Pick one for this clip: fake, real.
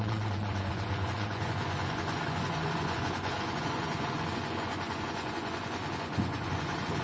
fake